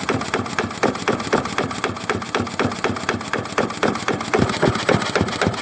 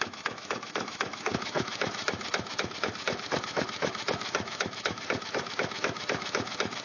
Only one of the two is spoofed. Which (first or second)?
second